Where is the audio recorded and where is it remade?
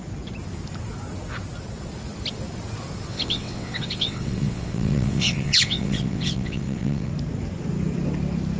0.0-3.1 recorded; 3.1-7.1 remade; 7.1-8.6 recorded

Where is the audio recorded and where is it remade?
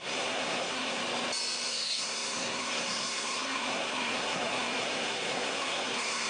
0.0-1.0 remade; 1.0-1.7 recorded; 1.7-6.3 remade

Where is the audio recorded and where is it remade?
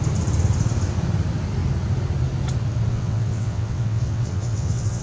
0.0-2.9 recorded; 2.9-5.0 remade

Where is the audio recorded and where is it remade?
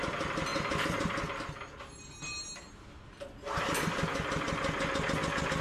0.0-5.6 recorded